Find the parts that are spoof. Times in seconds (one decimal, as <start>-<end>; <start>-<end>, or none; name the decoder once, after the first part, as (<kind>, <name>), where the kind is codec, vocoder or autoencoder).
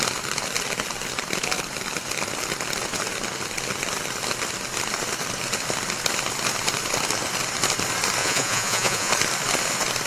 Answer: 8.2-9.1 (vocoder, Vocos)